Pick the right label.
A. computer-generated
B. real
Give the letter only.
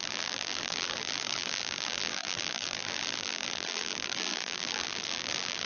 A